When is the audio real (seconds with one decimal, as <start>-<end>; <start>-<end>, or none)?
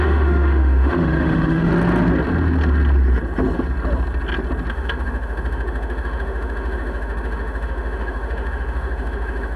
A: 1.7-4.7